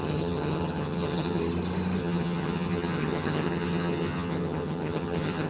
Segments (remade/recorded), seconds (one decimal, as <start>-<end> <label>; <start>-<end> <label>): 0.0-1.4 remade; 1.4-2.0 recorded; 2.0-5.5 remade